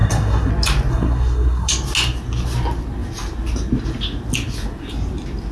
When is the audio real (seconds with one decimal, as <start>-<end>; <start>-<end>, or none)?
0.5-0.9; 1.7-5.5